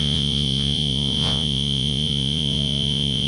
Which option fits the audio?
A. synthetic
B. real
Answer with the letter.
A